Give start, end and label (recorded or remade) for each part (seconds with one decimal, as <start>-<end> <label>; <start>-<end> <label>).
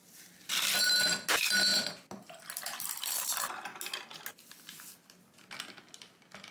0.0-6.5 recorded